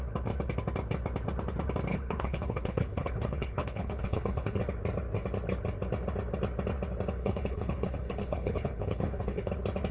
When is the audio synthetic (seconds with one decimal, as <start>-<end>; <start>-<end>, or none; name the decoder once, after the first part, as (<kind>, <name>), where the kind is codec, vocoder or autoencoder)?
1.9-4.6 (codec, HILCodec); 7.2-9.5